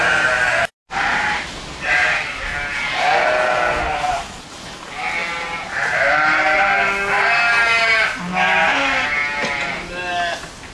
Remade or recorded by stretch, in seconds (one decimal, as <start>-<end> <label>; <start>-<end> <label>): 0.0-10.7 recorded